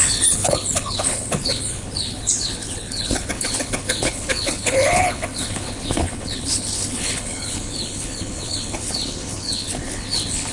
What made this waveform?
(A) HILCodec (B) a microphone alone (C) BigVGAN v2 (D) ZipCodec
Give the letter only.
A